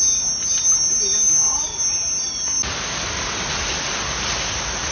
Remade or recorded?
recorded